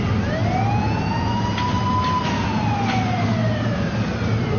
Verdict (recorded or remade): recorded